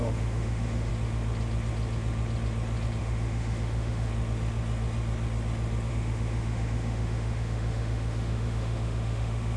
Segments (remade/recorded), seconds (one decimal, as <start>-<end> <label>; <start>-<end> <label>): 0.0-0.9 remade; 0.9-3.0 recorded; 3.0-4.1 remade; 4.1-5.9 recorded; 5.9-9.6 remade